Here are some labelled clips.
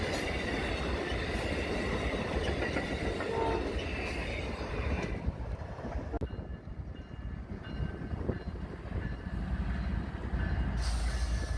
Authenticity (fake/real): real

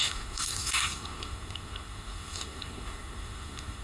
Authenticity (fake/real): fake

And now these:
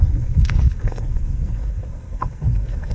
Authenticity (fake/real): fake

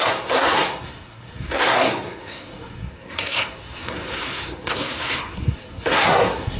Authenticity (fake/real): fake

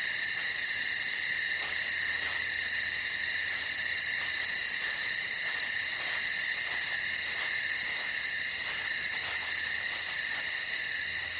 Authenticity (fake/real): real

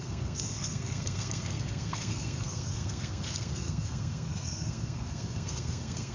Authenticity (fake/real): fake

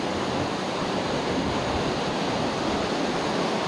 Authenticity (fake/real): real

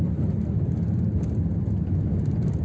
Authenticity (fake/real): real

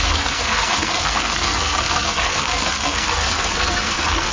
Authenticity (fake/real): fake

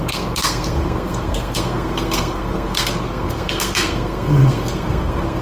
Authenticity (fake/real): fake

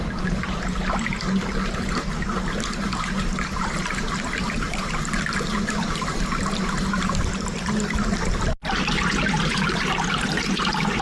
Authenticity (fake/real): real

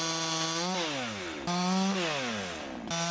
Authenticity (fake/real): real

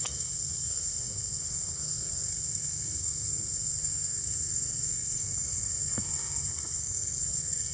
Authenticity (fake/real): fake